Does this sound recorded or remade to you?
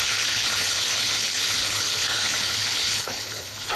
remade